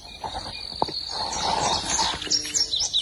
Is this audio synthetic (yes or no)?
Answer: no